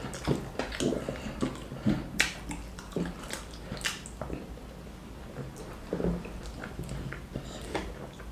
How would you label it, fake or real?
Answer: real